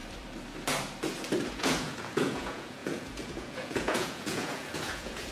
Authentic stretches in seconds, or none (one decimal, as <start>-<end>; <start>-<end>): 0.0-1.5